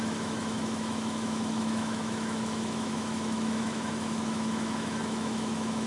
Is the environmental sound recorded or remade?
remade